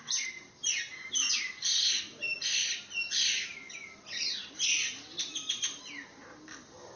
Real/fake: real